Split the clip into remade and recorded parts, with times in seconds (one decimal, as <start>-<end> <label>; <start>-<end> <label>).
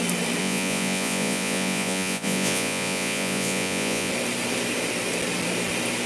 0.0-0.4 recorded; 0.4-4.1 remade; 4.1-6.1 recorded